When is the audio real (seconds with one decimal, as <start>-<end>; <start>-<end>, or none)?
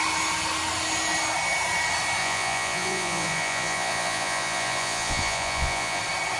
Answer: 0.0-2.2; 6.0-6.4